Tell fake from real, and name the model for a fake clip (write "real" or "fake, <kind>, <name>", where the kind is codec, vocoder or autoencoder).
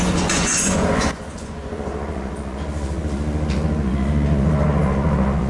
fake, vocoder, Vocos